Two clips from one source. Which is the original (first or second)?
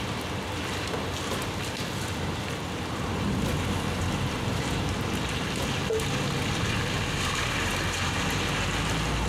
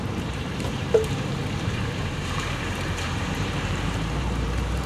first